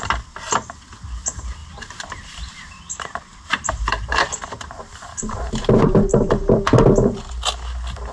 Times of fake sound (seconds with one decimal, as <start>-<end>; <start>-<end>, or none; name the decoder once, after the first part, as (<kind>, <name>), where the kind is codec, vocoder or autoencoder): 1.6-6.3 (vocoder, BigVGAN v2)